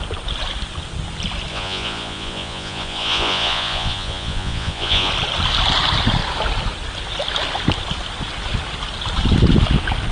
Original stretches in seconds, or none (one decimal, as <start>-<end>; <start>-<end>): 0.0-1.5; 5.1-10.1